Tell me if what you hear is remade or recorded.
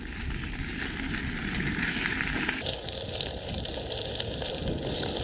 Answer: recorded